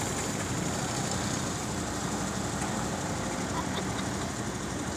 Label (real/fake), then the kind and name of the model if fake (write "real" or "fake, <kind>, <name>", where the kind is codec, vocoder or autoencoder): real